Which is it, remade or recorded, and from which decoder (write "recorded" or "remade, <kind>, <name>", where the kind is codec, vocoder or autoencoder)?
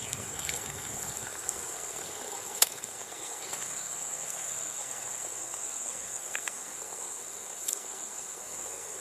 remade, codec, SNAC